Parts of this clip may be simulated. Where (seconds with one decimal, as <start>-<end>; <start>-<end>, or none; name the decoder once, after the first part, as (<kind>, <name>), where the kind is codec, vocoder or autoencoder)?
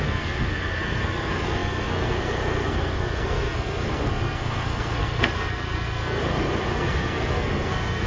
0.0-6.2 (codec, SNAC); 6.7-8.1